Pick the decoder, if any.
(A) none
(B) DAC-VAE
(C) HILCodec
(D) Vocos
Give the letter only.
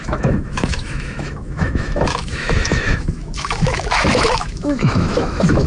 B